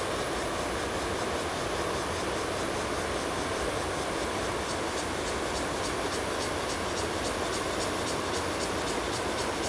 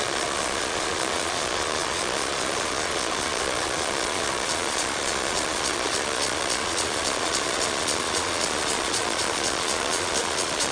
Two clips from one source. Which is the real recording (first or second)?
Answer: first